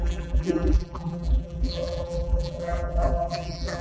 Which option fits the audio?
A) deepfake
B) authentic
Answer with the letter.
A